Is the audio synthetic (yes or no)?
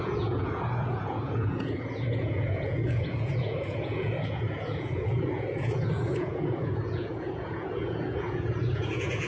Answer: yes